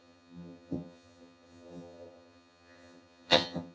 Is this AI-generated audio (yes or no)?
yes